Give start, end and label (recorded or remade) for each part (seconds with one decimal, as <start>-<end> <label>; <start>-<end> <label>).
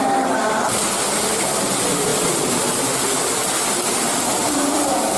0.0-5.2 recorded